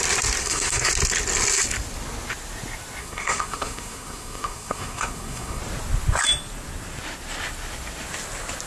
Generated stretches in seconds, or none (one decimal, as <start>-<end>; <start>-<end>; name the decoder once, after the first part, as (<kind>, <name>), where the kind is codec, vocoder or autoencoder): 0.4-0.9 (codec, SNAC); 3.0-5.6